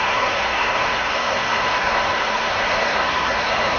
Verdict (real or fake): fake